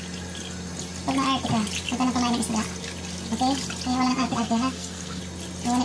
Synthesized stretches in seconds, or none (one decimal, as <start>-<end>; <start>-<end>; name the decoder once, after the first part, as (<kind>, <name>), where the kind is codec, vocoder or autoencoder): 4.1-5.2 (codec, SNAC)